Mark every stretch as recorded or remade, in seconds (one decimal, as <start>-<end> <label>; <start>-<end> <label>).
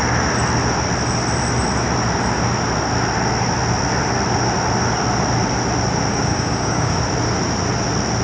0.0-6.1 recorded; 6.1-7.0 remade; 7.0-8.2 recorded